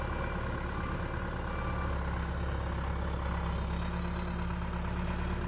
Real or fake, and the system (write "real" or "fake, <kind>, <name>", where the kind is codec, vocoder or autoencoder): real